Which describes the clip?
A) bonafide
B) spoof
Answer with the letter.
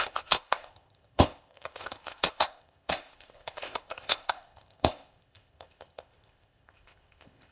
B